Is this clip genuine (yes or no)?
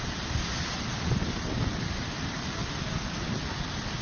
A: yes